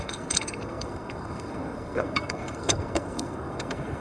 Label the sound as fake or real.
fake